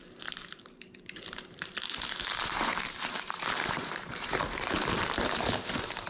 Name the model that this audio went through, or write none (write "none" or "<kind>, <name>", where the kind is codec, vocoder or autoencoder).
vocoder, BigVGAN v2